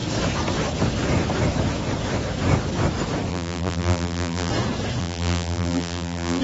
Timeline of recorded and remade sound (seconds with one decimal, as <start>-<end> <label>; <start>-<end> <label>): 0.0-3.3 recorded; 3.3-4.5 remade; 4.5-5.0 recorded; 5.0-6.4 remade